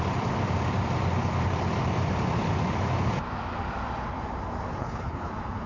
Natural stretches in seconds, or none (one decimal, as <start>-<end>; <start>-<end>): 0.0-4.8; 5.3-5.7